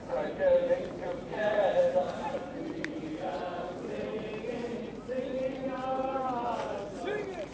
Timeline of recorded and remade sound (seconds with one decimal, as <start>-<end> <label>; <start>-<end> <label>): 0.0-3.0 remade; 3.0-3.6 recorded; 3.6-7.5 remade